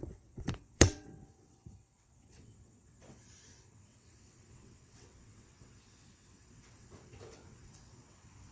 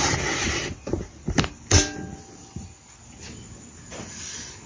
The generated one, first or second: first